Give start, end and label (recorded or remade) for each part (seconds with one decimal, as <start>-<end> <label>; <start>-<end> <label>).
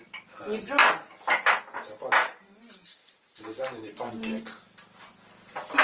0.0-2.2 recorded; 2.2-4.1 remade; 4.1-5.8 recorded